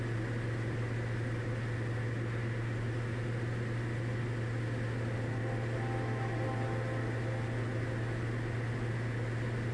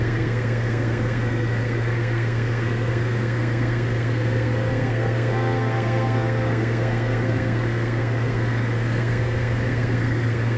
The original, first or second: first